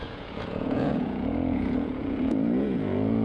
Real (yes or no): no